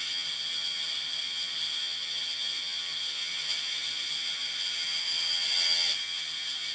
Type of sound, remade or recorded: remade